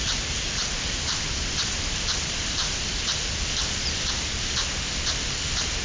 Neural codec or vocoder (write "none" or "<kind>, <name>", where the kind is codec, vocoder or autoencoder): none